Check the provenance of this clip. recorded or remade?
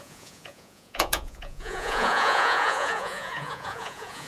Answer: remade